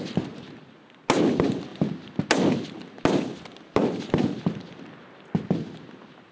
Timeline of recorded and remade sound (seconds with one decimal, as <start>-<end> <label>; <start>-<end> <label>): 0.0-6.3 recorded